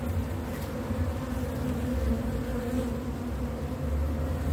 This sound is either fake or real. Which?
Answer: real